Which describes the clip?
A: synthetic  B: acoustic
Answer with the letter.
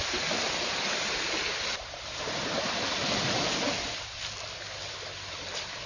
B